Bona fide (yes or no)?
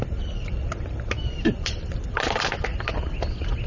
yes